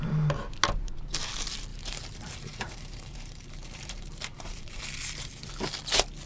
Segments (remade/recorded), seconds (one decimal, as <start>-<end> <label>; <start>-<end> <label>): 0.0-1.7 recorded; 1.7-5.5 remade; 5.5-6.3 recorded